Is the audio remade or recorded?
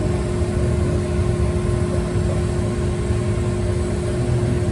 recorded